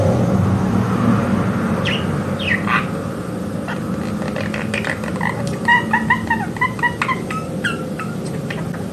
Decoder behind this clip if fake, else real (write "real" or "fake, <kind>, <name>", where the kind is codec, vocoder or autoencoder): real